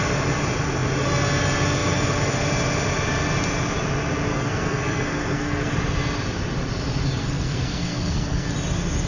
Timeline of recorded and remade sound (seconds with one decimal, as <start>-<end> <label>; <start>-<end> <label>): 0.0-4.3 recorded; 4.3-5.7 remade; 5.7-7.2 recorded; 7.2-8.5 remade; 8.5-9.1 recorded